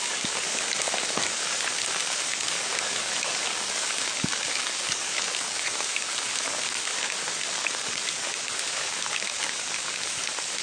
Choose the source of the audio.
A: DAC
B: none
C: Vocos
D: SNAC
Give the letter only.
A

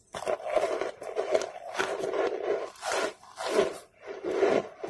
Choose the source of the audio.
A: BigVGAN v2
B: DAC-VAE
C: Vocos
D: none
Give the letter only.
D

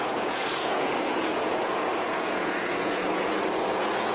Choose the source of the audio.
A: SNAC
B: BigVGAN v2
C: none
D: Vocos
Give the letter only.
D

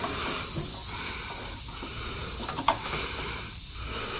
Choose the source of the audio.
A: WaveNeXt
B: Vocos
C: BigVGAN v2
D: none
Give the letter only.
D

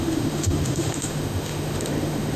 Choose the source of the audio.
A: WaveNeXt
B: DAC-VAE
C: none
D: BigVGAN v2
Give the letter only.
B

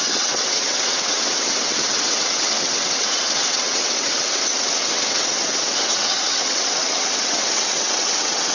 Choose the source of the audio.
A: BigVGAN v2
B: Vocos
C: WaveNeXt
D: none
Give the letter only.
C